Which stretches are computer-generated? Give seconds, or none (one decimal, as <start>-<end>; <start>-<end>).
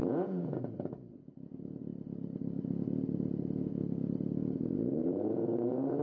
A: 0.0-1.9; 3.3-3.8; 4.4-6.0